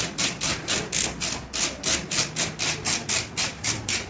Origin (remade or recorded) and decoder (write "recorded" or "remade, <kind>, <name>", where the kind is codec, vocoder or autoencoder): recorded